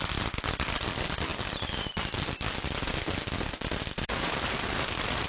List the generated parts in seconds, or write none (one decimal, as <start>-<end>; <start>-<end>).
0.0-5.3